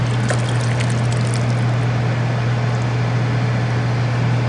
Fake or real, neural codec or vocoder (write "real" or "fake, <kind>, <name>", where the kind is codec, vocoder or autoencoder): real